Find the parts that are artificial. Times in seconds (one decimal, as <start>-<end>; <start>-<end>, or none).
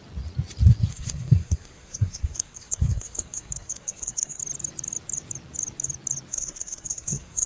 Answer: 0.9-4.4; 6.3-7.5